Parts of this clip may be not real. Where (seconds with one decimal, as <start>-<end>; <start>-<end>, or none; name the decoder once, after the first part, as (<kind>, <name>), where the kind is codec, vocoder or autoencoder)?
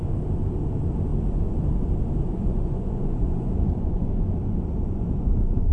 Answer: 2.2-5.7 (vocoder, Vocos)